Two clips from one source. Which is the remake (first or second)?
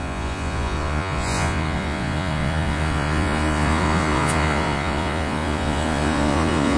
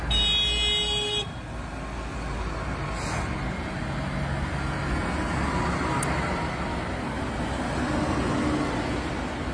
first